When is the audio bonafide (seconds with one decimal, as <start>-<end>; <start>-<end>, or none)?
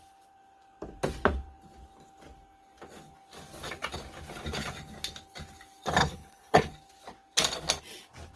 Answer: 0.0-6.0; 6.7-8.4